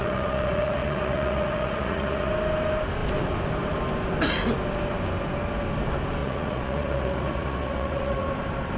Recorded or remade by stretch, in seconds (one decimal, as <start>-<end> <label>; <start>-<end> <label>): 0.0-2.3 remade; 2.3-6.2 recorded; 6.2-8.3 remade; 8.3-8.8 recorded